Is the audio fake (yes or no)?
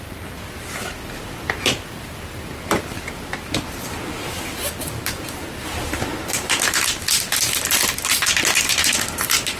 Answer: no